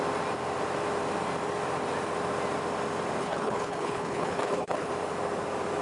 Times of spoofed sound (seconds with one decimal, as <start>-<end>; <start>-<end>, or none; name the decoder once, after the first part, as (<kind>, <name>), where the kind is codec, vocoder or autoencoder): 3.2-4.9 (codec, HILCodec)